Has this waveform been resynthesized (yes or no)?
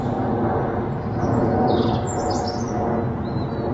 no